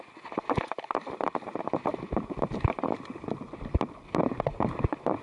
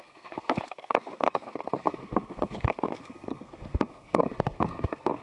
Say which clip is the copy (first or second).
second